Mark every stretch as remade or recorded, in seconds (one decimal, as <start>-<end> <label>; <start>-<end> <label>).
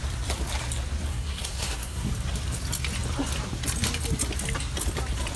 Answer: 0.0-1.1 recorded; 1.1-2.1 remade; 2.1-5.4 recorded